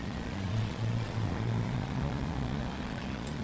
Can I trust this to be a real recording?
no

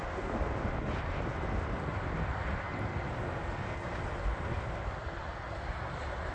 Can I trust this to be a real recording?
yes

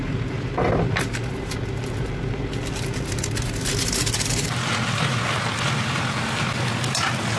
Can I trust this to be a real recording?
yes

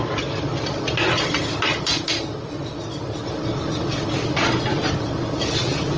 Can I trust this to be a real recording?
yes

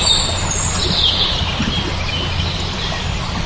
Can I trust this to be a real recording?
yes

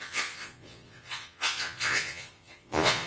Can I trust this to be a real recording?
no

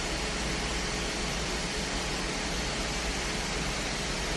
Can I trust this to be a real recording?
yes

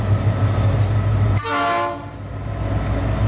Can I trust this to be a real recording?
yes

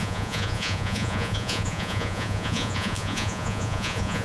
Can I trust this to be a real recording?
no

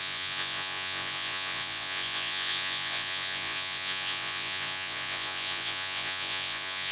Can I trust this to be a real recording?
no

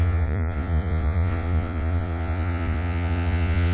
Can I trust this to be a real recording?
no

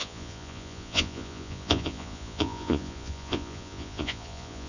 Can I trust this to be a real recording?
no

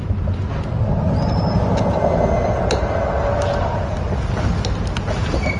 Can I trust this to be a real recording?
yes